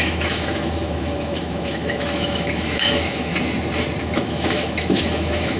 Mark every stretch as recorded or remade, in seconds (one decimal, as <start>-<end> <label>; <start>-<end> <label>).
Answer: 0.0-3.3 remade; 3.3-4.0 recorded; 4.0-5.6 remade